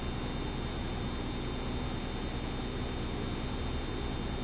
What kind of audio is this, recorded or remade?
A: recorded